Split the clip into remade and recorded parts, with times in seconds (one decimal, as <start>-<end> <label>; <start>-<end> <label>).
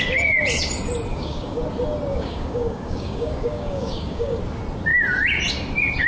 0.0-1.1 recorded; 1.1-1.6 remade; 1.6-2.1 recorded; 2.1-4.4 remade; 4.4-6.1 recorded